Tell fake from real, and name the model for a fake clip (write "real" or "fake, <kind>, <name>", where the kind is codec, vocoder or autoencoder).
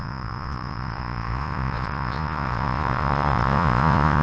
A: fake, vocoder, Vocos